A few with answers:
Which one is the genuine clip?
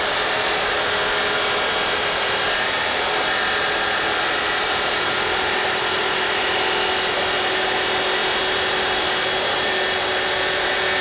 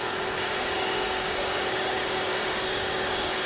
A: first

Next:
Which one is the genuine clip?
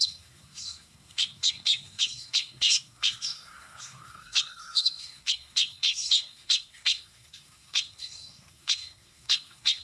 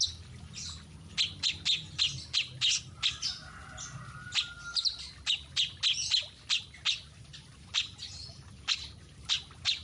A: second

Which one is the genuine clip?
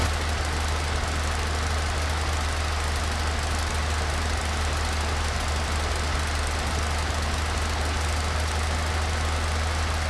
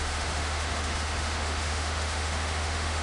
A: first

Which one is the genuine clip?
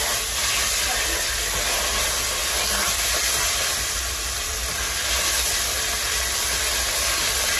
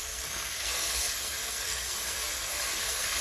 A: first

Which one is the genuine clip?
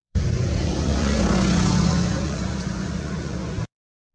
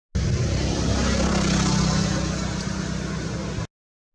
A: second